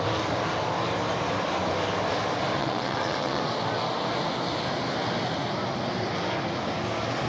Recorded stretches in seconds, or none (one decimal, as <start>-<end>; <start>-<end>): 0.0-2.6; 3.4-7.3